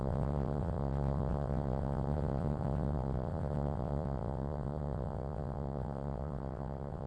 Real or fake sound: fake